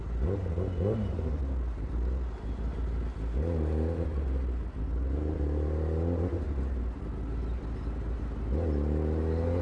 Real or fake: real